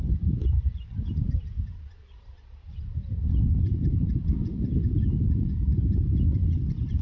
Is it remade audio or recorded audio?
recorded